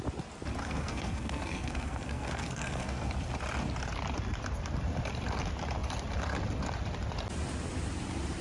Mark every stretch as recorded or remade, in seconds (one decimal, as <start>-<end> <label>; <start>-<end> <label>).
0.0-0.6 recorded; 0.6-3.1 remade; 3.1-8.4 recorded